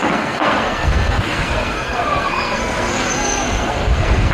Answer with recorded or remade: remade